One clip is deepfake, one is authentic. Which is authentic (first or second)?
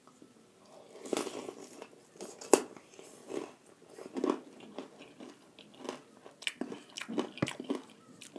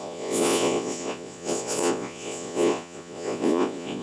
first